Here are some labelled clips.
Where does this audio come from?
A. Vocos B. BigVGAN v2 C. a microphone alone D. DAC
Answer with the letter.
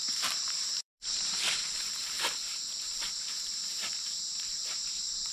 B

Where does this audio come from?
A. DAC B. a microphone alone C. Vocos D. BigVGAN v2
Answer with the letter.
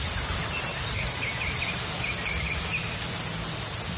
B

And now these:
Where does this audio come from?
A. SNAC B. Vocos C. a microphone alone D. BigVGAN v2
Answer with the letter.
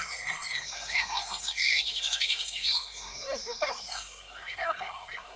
A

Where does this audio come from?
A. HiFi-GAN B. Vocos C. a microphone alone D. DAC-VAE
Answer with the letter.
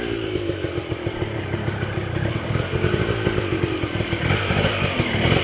C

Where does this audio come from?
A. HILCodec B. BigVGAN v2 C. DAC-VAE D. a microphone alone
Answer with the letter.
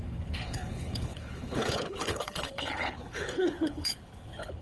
A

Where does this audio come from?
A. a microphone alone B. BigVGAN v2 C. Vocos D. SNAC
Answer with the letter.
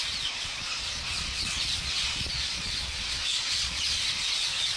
C